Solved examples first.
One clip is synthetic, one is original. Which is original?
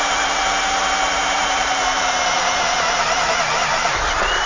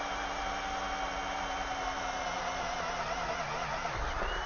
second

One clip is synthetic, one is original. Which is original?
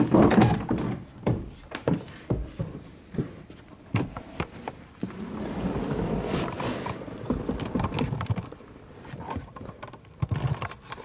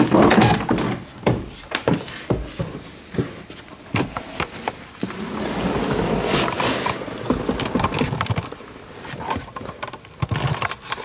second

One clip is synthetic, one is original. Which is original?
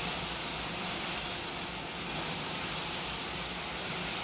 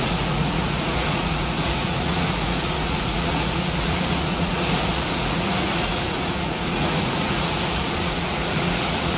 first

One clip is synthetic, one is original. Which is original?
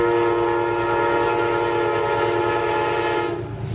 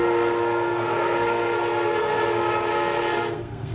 first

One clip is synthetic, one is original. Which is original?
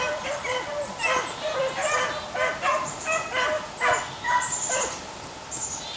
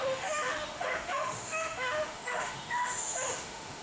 first